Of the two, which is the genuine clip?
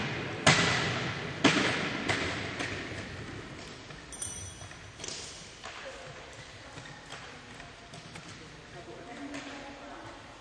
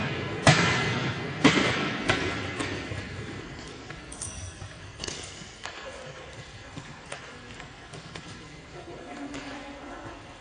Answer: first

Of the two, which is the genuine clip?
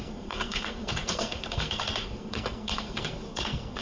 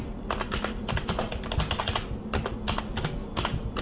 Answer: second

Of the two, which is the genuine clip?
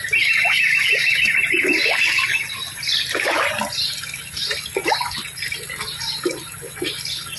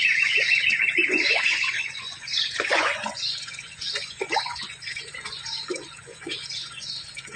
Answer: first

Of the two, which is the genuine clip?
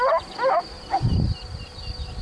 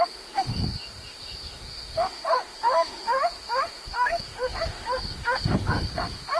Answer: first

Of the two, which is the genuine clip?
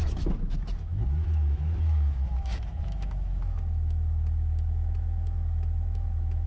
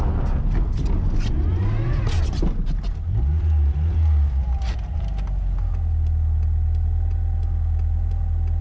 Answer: second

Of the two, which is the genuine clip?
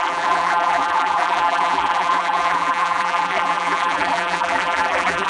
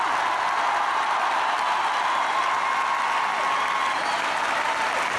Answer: second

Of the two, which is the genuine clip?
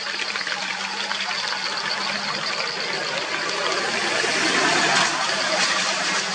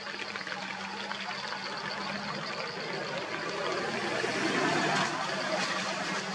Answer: second